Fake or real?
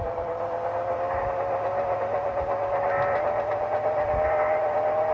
real